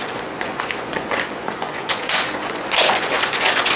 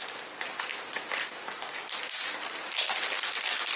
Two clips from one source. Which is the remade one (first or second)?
first